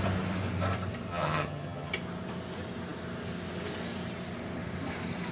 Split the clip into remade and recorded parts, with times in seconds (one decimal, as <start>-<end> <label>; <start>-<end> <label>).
0.0-1.1 recorded; 1.1-1.9 remade; 1.9-5.3 recorded